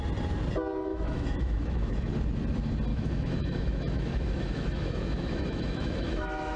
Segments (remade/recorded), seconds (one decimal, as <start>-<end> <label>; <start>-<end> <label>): 0.0-0.9 recorded; 0.9-2.1 remade; 2.1-2.9 recorded; 2.9-6.6 remade